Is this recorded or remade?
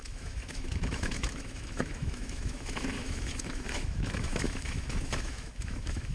remade